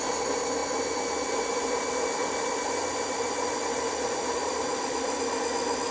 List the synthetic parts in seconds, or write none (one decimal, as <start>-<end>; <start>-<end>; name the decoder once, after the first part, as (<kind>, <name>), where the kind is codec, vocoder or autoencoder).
none